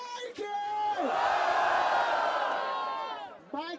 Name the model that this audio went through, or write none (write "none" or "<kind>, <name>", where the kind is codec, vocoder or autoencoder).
none